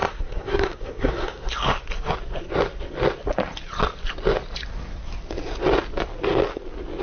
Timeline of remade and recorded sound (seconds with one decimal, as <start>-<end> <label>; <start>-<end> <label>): 0.0-1.5 remade; 1.5-7.0 recorded